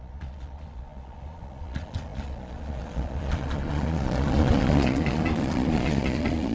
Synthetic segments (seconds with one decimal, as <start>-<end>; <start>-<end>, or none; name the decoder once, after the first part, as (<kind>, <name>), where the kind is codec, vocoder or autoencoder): 0.0-6.5 (vocoder, Vocos)